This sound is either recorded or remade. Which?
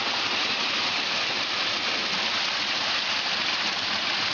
recorded